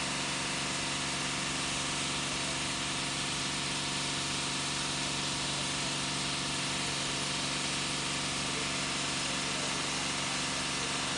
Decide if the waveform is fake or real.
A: real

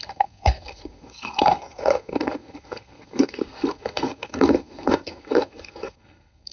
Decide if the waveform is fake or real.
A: fake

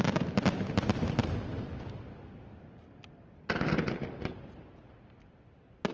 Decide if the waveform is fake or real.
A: real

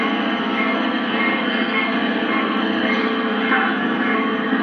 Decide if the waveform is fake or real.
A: fake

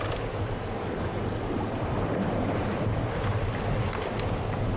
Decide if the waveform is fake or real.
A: real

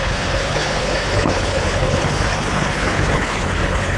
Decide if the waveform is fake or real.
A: fake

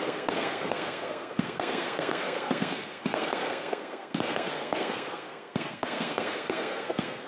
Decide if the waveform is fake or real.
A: fake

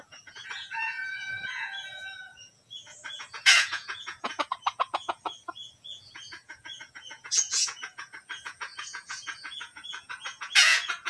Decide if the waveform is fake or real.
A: fake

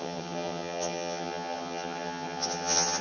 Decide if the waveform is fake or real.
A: fake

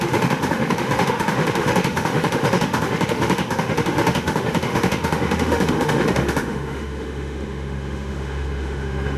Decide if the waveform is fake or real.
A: fake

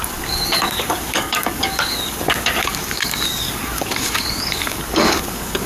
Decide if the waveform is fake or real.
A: fake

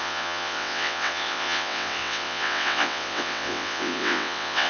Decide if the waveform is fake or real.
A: fake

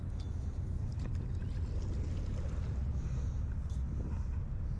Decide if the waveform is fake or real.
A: real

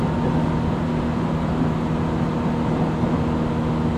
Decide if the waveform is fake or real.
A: real